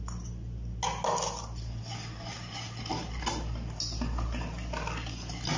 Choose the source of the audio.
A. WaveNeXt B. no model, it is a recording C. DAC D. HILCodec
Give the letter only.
B